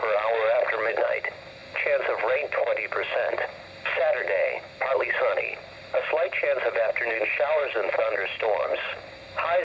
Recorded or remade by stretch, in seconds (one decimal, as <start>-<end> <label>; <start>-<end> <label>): 0.0-1.0 remade; 1.0-7.1 recorded; 7.1-7.9 remade; 7.9-9.6 recorded